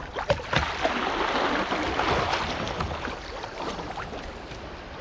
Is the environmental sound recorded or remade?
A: recorded